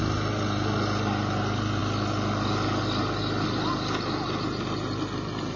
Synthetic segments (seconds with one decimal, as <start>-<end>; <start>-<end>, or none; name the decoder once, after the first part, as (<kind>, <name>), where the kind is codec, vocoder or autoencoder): none